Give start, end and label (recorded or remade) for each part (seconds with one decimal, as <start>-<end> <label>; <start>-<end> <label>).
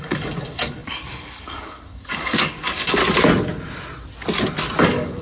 0.0-3.0 remade; 3.0-4.8 recorded; 4.8-5.2 remade